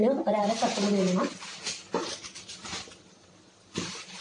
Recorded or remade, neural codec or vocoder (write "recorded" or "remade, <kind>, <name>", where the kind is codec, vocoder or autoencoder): recorded